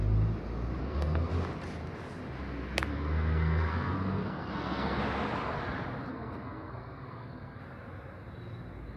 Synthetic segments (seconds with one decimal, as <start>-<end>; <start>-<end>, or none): 0.8-1.3; 2.9-5.0; 6.1-7.6